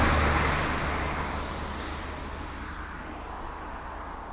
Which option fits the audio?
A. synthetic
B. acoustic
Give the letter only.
B